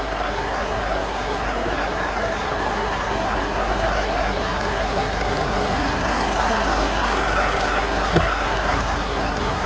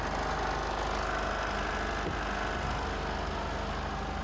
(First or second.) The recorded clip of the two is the second